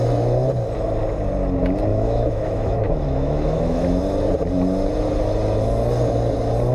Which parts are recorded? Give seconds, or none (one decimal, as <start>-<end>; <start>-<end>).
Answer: 0.0-1.9; 4.0-6.7